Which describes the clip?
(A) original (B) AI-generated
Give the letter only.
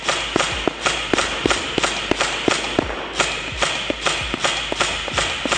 A